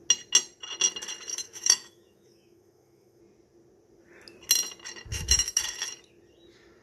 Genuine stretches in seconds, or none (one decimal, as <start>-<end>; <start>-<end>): 0.0-1.3; 3.2-5.1; 5.6-6.8